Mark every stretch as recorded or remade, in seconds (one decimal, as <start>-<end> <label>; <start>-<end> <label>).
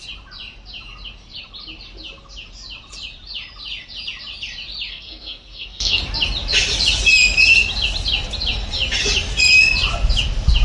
0.0-4.9 recorded; 4.9-6.0 remade; 6.0-10.6 recorded